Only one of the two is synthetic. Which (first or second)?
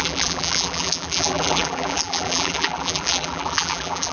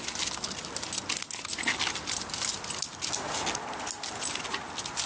first